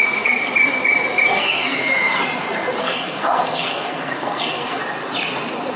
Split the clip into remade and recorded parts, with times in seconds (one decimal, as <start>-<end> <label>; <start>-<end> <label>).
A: 0.0-0.4 remade; 0.4-1.3 recorded; 1.3-2.2 remade; 2.2-2.8 recorded; 2.8-4.8 remade; 4.8-5.8 recorded